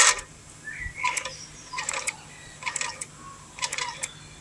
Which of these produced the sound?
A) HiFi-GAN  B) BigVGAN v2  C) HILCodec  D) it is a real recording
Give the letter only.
D